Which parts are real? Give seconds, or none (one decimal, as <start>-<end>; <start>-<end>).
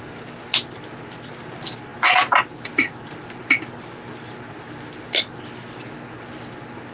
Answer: 0.0-6.9